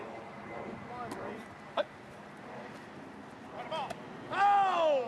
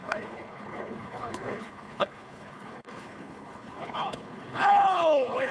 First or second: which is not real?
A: second